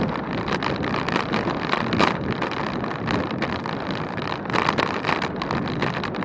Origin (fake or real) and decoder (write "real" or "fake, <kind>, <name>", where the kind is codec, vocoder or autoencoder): fake, vocoder, BigVGAN v2